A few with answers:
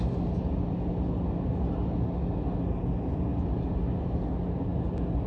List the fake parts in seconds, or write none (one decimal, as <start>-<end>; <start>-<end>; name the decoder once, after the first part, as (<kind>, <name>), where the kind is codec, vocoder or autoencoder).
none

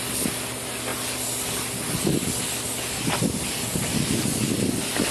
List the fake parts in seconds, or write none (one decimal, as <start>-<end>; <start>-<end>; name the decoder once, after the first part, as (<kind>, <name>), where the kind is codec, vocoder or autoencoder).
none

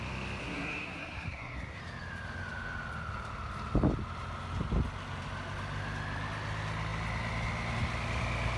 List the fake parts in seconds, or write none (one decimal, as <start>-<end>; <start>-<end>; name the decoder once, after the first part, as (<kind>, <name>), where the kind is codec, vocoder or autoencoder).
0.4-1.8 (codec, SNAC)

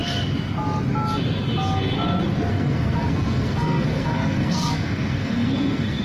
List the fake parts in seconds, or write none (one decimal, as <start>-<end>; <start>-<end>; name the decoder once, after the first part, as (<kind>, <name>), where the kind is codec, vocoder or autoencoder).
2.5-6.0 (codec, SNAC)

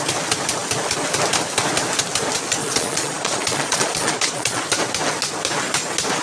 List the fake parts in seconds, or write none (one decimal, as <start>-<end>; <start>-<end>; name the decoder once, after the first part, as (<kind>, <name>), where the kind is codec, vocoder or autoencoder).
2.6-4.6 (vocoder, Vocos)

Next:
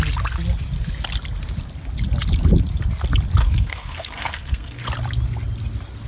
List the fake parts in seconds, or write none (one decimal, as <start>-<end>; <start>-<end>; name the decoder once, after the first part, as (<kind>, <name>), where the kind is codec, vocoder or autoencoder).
3.4-4.9 (codec, SNAC)